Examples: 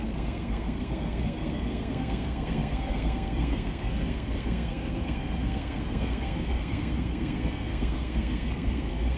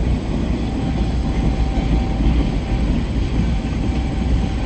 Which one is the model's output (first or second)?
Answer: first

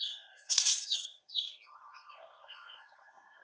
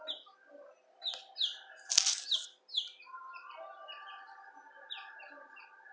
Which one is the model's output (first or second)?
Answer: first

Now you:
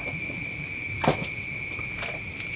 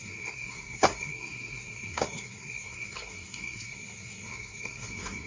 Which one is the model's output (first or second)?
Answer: second